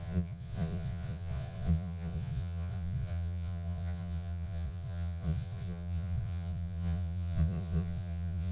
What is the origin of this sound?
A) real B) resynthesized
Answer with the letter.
B